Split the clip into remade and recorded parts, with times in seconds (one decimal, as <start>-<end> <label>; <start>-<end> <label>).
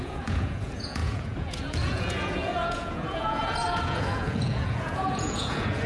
0.0-5.9 remade